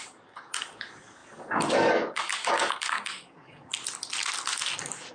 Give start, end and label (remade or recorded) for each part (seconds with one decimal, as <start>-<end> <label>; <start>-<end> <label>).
0.0-3.7 remade; 3.7-5.1 recorded